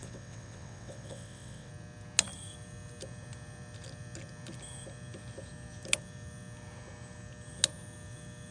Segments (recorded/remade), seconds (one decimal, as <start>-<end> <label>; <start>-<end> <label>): 0.0-1.7 remade; 1.7-8.5 recorded